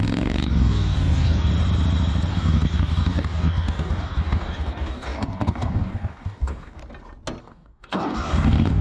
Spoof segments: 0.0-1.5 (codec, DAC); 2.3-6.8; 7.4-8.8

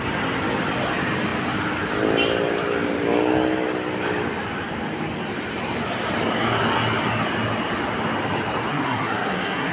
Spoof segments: 8.7-9.7 (codec, SNAC)

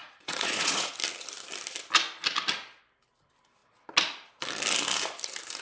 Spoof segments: 0.0-0.9 (vocoder, Vocos)

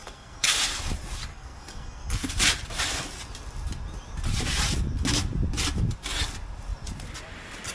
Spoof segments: 0.0-0.5 (codec, SNAC); 1.3-2.3

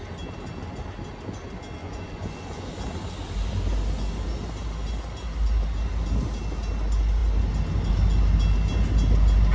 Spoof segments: 1.8-2.7 (vocoder, Vocos)